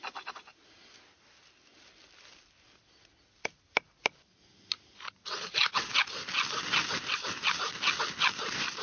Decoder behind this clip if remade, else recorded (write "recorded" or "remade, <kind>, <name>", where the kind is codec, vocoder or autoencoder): recorded